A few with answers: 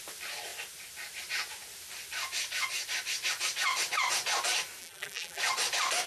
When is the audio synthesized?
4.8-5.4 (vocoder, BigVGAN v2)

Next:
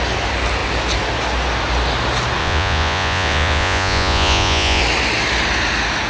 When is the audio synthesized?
2.4-4.8 (vocoder, Vocos)

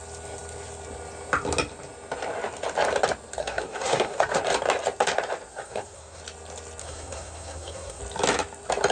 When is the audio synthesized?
3.4-4.4 (codec, SNAC); 5.5-6.2; 6.8-8.0